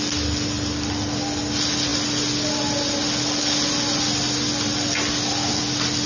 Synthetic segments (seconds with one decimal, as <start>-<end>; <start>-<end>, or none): none